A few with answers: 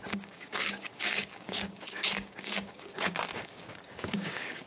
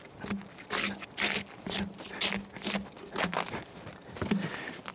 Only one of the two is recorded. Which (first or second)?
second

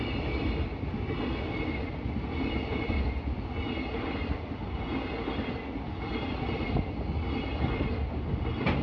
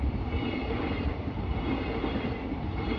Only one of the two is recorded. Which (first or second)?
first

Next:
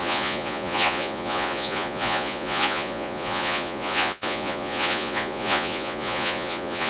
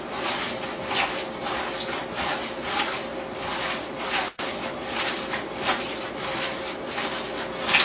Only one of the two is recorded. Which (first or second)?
second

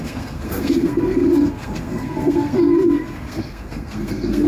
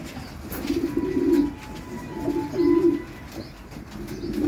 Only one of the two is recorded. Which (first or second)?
second